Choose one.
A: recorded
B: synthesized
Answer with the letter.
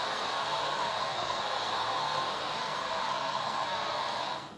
B